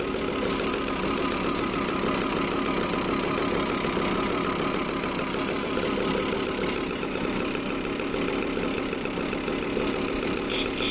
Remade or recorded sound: remade